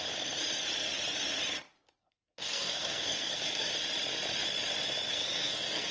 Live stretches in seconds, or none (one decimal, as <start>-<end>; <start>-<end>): 0.0-2.0; 3.7-5.1